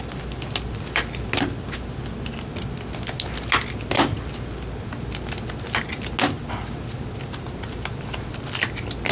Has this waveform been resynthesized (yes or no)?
no